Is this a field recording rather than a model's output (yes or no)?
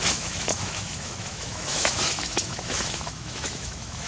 no